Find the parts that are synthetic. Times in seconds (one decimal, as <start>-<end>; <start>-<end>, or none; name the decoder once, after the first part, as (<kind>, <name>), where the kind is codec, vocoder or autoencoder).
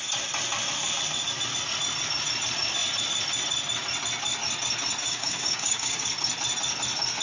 5.0-6.1 (codec, DAC)